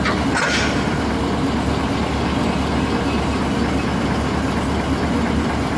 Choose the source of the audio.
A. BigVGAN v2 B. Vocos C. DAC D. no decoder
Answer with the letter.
D